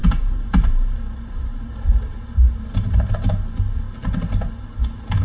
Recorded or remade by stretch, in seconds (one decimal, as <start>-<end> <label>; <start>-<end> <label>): 0.0-3.1 remade; 3.1-5.2 recorded